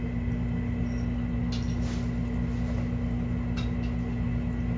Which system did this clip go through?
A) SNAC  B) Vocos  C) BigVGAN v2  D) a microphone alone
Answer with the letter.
D